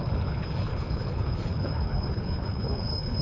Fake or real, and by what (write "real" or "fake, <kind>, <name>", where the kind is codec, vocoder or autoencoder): fake, codec, HILCodec